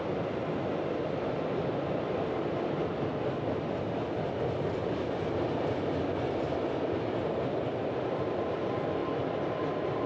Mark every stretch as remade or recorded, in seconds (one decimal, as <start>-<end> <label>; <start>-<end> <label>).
0.0-10.1 recorded